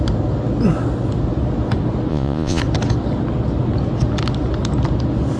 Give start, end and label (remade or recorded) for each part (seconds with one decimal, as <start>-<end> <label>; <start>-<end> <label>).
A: 0.0-2.1 recorded; 2.1-2.6 remade; 2.6-5.4 recorded